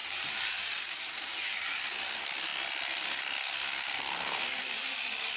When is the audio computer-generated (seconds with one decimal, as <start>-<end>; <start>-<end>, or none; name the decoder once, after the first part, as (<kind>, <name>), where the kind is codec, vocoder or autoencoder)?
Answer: 0.0-1.8 (vocoder, BigVGAN v2)